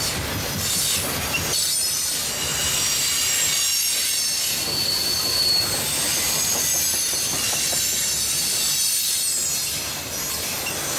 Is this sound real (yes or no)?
yes